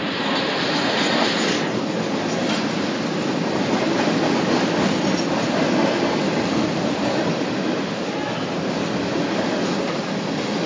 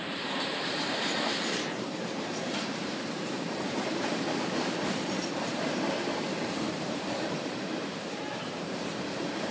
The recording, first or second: first